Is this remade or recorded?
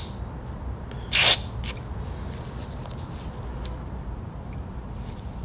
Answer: recorded